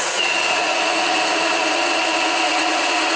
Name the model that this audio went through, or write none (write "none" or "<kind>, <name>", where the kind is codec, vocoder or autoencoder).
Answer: vocoder, Vocos